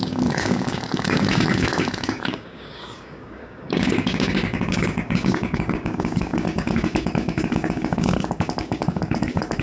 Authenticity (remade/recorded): remade